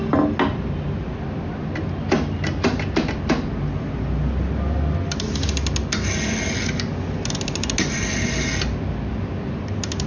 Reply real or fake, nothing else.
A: real